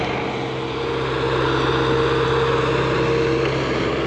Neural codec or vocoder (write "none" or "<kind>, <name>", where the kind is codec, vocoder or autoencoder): none